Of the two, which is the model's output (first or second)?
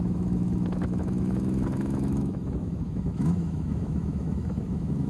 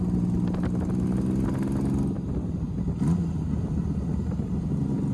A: first